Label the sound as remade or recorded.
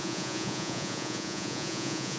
remade